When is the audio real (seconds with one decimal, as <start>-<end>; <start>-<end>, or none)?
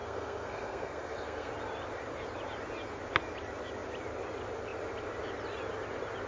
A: 1.5-6.3